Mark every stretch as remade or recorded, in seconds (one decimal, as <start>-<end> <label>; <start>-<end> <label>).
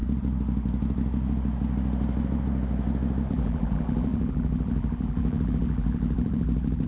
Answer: 0.0-3.3 recorded; 3.3-6.9 remade